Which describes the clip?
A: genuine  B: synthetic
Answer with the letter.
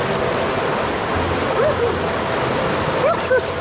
A